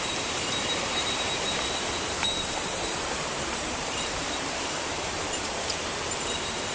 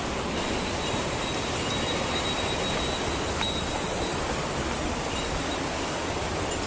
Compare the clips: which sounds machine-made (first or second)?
first